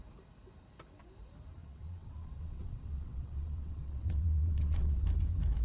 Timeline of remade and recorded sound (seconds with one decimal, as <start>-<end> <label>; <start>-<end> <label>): 0.0-1.6 recorded; 1.6-5.0 remade; 5.0-5.6 recorded